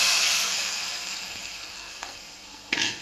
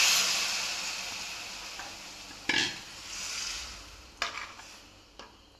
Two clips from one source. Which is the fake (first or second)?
first